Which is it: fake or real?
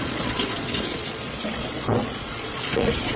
fake